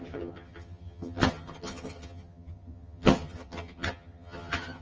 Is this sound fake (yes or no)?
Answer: yes